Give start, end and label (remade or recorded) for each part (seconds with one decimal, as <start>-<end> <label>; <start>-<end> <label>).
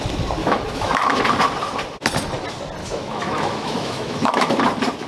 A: 0.0-0.4 recorded; 0.4-1.2 remade; 1.2-2.8 recorded; 2.8-4.6 remade; 4.6-5.1 recorded